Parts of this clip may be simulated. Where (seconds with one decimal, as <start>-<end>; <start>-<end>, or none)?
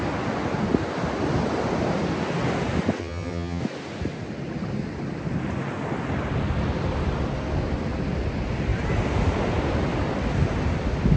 3.0-3.6